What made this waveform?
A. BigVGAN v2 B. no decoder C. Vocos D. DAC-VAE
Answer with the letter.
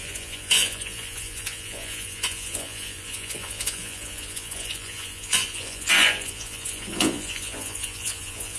C